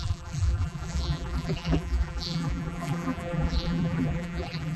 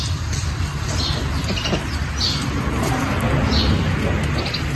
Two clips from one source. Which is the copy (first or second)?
first